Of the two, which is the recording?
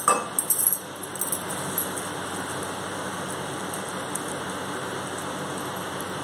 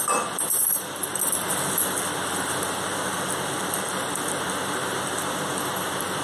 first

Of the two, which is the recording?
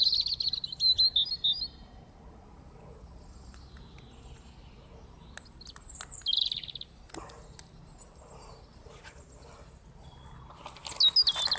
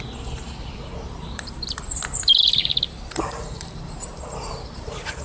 first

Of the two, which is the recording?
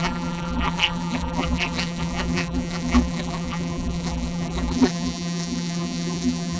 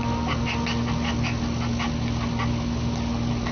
second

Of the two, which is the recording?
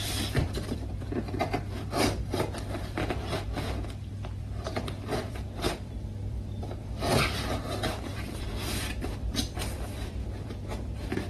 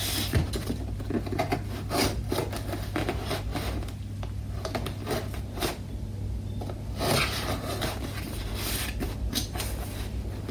second